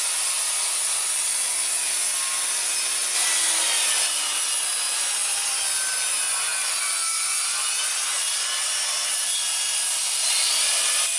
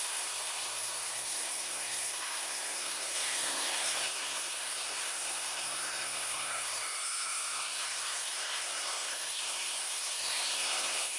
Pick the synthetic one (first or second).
second